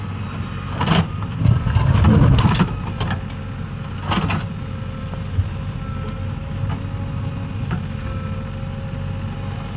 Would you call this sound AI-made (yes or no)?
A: no